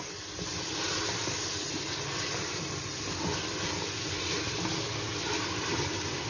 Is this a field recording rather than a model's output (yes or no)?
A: yes